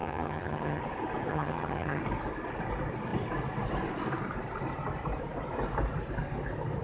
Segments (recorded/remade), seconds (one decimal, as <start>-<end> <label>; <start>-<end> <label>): 0.0-0.8 remade; 0.8-1.3 recorded; 1.3-2.0 remade; 2.0-6.8 recorded